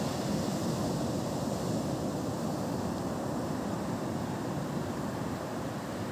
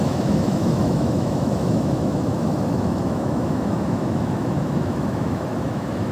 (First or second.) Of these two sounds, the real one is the first